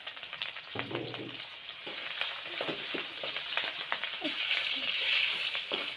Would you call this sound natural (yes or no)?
no